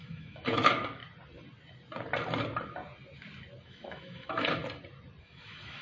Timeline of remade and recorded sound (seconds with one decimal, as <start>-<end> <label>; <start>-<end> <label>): 0.0-1.0 remade; 1.0-3.6 recorded; 3.6-4.6 remade; 4.6-5.2 recorded; 5.2-5.8 remade